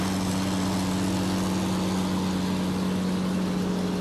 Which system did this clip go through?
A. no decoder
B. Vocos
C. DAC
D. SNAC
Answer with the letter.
A